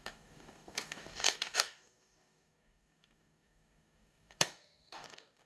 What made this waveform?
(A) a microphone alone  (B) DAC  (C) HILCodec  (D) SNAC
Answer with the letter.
B